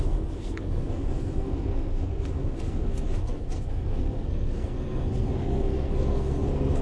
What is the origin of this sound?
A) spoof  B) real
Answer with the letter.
A